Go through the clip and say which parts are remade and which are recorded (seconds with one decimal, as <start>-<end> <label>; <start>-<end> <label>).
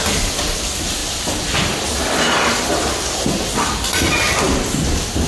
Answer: 0.0-5.3 recorded